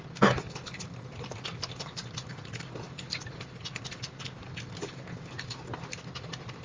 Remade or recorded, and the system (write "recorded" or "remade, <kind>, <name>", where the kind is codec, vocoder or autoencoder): recorded